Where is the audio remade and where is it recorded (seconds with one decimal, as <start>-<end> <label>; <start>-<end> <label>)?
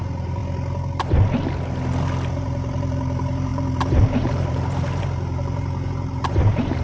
0.0-0.4 remade; 0.4-2.3 recorded; 2.3-6.8 remade